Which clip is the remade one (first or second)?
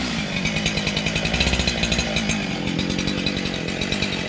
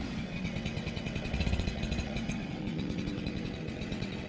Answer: second